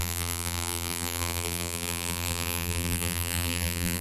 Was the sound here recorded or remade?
remade